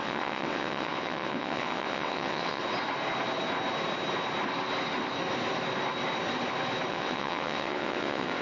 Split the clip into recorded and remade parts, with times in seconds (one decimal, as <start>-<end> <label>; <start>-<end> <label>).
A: 0.0-2.6 remade; 2.6-6.9 recorded; 6.9-8.4 remade